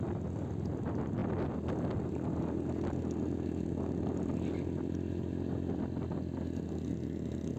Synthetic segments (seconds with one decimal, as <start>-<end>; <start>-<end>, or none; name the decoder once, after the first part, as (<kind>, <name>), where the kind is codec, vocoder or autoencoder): none